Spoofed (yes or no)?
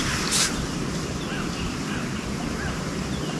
no